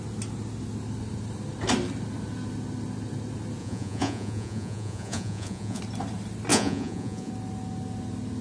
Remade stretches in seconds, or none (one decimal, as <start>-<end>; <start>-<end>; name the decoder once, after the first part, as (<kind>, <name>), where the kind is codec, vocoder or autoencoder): 3.6-5.8 (vocoder, Vocos); 6.5-7.3